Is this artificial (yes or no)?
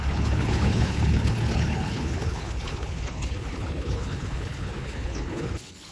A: yes